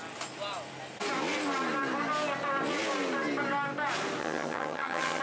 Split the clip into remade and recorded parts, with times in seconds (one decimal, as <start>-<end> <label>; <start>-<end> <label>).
0.0-4.2 recorded; 4.2-5.2 remade